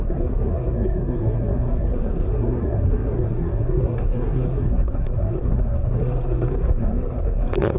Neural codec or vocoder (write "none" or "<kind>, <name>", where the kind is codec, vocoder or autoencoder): codec, SNAC